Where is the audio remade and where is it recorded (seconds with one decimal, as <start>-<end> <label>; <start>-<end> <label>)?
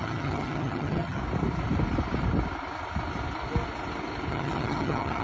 0.0-1.2 remade; 1.2-4.3 recorded; 4.3-5.2 remade